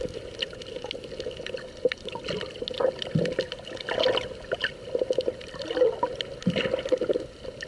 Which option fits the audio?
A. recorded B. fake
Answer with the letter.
A